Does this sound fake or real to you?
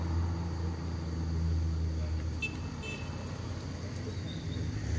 real